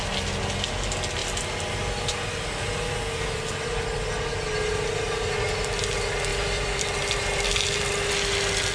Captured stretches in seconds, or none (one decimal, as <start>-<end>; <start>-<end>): 0.0-6.3; 8.1-8.7